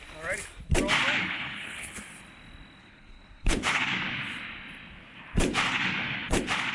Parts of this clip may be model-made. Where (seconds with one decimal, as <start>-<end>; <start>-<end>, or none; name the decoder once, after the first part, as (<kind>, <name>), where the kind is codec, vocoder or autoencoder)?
1.2-2.0 (codec, HILCodec); 2.8-3.8